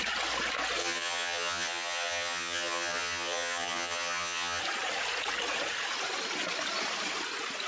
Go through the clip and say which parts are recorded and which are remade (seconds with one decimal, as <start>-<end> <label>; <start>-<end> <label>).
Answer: 0.0-0.8 recorded; 0.8-4.6 remade; 4.6-7.7 recorded